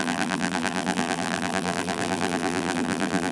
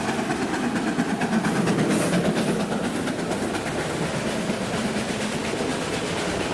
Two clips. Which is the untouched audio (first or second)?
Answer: second